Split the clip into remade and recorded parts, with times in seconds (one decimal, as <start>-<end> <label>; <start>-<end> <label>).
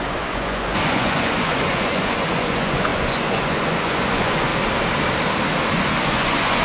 0.0-4.5 remade; 4.5-5.7 recorded; 5.7-6.6 remade